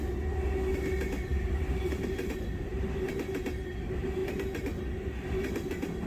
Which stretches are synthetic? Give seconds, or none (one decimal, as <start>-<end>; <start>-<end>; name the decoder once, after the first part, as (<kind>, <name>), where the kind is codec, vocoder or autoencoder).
1.3-3.1 (vocoder, BigVGAN v2)